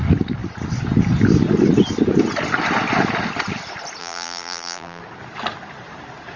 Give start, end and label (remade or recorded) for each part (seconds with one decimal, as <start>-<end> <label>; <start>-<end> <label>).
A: 0.0-4.0 recorded; 4.0-5.0 remade; 5.0-6.4 recorded